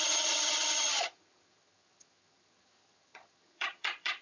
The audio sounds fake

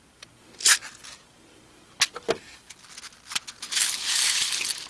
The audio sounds real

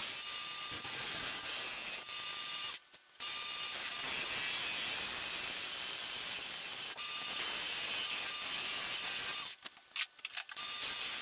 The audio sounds real